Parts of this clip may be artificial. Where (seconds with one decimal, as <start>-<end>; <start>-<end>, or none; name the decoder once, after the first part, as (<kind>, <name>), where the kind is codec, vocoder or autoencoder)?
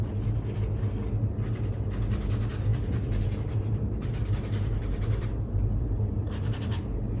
2.7-6.8 (vocoder, BigVGAN v2)